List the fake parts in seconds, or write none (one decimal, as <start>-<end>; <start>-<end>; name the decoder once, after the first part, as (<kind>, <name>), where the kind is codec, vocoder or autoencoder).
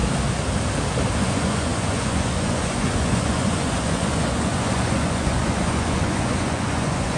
1.2-7.2 (vocoder, Vocos)